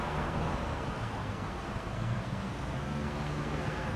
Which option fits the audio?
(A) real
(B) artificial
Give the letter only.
B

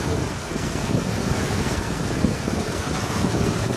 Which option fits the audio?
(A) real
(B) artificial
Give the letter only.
B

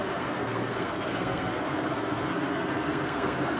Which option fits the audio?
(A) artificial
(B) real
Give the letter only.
A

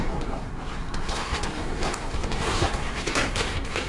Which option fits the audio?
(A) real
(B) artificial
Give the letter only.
B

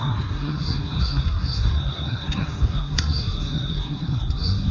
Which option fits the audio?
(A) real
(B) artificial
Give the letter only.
B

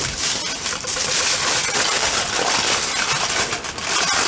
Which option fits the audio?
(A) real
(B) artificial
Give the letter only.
A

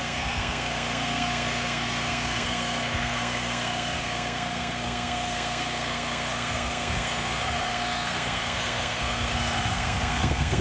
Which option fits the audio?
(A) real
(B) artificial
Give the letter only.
B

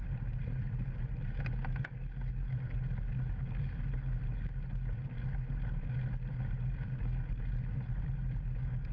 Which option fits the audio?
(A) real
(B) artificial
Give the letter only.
A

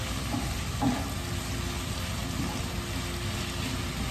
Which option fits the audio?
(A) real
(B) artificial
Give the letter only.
A